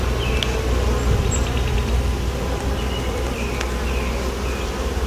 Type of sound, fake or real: real